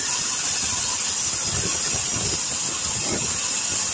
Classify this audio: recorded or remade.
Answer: recorded